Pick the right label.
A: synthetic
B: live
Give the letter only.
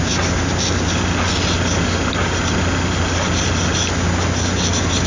B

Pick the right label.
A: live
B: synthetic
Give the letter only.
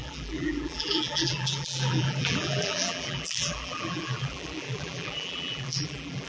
B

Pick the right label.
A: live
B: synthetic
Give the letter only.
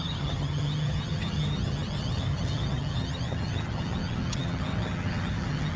B